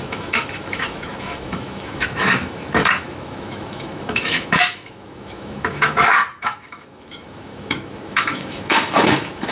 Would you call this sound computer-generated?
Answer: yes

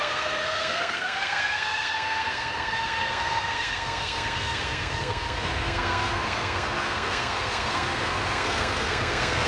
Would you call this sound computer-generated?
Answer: yes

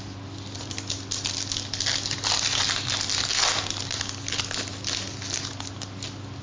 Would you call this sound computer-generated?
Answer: no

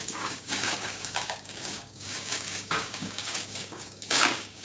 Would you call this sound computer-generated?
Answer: yes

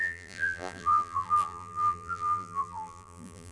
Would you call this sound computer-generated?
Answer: yes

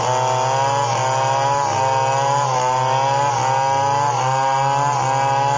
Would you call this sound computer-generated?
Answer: no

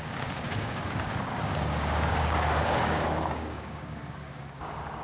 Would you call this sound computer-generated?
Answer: yes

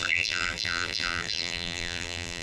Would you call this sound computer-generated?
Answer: yes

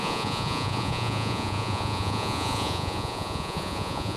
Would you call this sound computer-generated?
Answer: yes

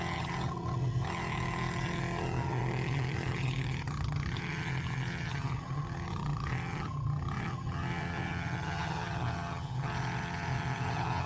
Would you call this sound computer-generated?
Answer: yes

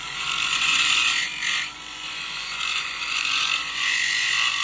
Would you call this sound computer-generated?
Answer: yes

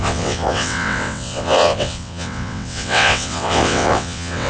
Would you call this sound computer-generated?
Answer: yes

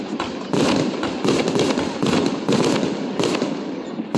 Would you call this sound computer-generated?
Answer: no